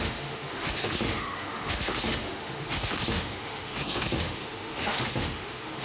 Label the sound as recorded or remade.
remade